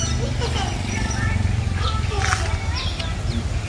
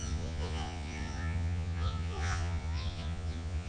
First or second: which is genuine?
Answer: first